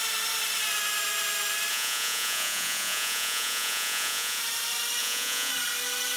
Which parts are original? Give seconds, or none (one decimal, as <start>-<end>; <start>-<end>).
0.0-1.7; 4.4-5.0; 5.5-6.2